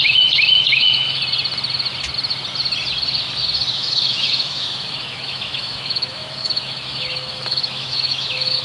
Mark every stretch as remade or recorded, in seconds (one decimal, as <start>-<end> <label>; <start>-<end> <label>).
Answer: 0.0-1.2 remade; 1.2-3.7 recorded; 3.7-8.6 remade